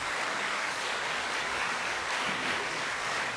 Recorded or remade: remade